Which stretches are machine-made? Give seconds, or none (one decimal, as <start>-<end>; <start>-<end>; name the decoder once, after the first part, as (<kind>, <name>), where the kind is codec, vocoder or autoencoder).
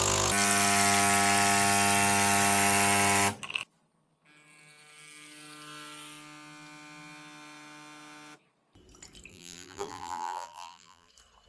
9.3-11.1 (vocoder, BigVGAN v2)